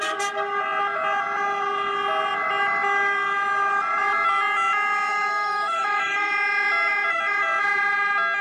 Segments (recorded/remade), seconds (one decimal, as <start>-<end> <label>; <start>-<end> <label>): 0.0-5.1 recorded; 5.1-6.3 remade; 6.3-8.4 recorded